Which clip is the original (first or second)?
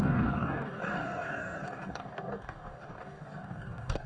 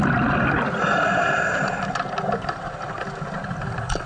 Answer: second